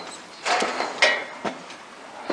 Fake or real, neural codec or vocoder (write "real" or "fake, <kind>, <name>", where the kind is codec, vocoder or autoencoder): real